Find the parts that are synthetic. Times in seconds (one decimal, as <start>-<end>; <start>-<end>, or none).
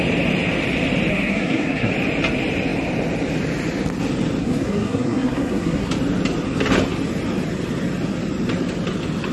1.1-1.9; 4.4-5.9